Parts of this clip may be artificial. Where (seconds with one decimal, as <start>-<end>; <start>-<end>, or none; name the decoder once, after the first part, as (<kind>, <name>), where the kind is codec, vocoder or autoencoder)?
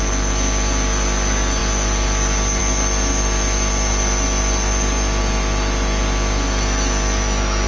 none